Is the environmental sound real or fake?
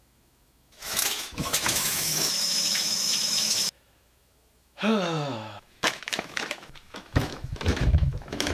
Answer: fake